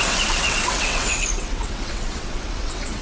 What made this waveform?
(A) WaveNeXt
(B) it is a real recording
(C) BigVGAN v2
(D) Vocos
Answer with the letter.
A